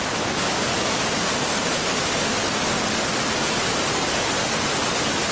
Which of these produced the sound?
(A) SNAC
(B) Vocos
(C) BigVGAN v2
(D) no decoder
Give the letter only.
D